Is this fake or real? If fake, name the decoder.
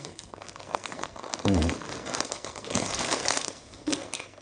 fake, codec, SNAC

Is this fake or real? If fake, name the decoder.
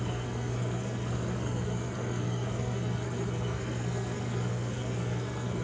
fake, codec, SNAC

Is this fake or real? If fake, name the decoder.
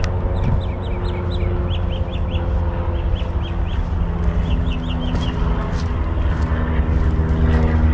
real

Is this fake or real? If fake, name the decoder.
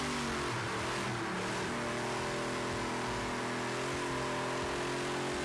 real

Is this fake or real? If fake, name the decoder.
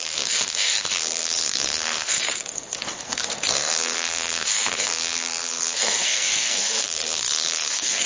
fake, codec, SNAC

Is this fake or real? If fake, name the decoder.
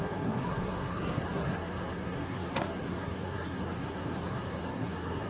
fake, codec, SNAC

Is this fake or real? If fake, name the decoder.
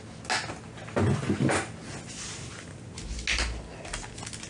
real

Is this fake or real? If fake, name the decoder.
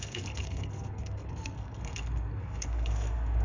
fake, codec, SNAC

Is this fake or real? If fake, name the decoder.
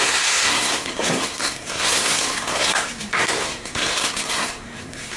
fake, codec, SNAC